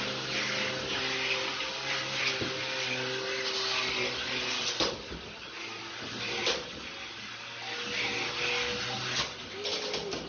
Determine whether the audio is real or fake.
real